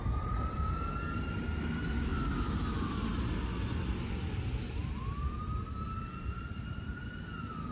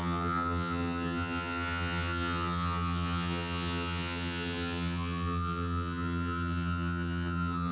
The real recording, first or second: first